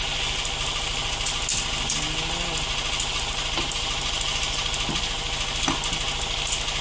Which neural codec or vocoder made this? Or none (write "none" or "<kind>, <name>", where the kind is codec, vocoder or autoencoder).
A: none